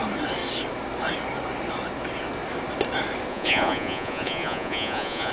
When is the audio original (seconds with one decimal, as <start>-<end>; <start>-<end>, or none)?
0.0-3.3